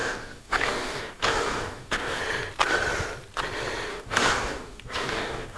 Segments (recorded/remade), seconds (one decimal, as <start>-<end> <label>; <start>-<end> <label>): 0.0-2.2 remade; 2.2-3.9 recorded; 3.9-5.6 remade